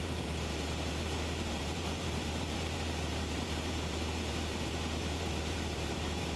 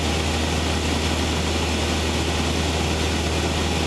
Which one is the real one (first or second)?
second